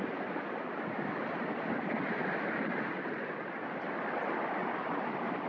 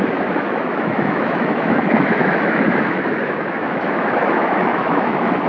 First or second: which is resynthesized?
second